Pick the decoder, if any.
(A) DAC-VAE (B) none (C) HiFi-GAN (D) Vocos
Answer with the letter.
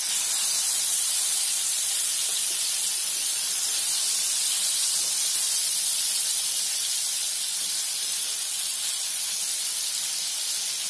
B